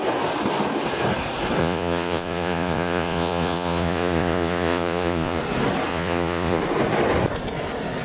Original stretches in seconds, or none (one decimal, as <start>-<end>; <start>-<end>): 0.0-1.6; 5.4-5.9; 6.6-8.0